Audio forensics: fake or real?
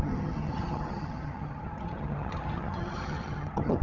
fake